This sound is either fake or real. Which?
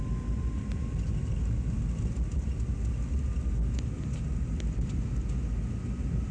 real